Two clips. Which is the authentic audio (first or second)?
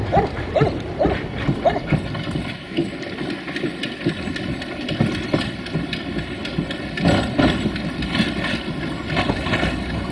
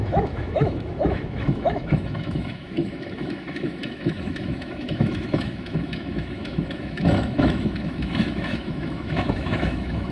first